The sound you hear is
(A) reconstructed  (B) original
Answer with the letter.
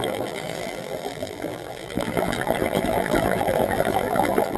A